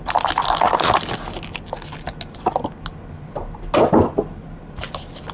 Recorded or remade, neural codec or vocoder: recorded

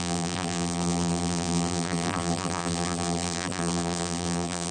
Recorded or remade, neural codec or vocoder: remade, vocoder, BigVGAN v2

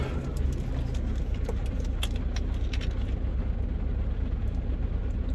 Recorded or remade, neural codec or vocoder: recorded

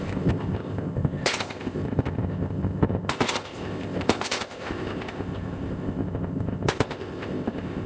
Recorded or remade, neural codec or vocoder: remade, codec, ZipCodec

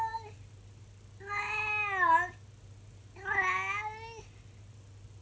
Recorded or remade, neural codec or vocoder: recorded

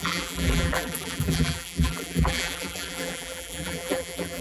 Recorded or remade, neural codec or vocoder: remade, vocoder, BigVGAN v2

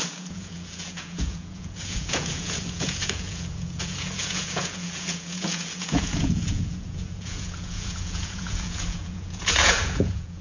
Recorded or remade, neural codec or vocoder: remade, vocoder, Vocos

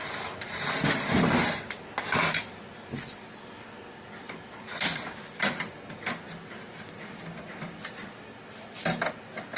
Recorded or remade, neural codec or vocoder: recorded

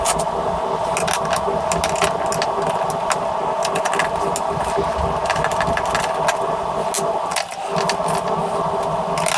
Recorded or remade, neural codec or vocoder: recorded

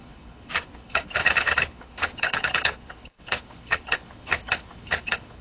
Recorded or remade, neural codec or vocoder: remade, codec, HILCodec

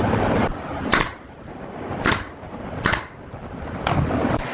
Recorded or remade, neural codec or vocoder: recorded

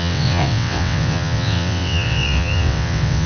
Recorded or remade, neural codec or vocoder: remade, vocoder, WaveNeXt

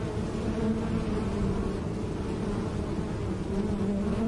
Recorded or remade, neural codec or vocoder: recorded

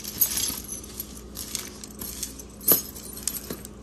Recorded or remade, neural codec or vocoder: recorded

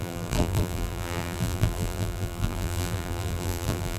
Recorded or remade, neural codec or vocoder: remade, vocoder, BigVGAN v2